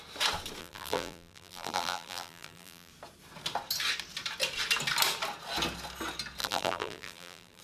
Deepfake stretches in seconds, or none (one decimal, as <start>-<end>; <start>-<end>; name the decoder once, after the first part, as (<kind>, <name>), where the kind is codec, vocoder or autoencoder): 0.6-2.9 (vocoder, BigVGAN v2); 6.4-7.6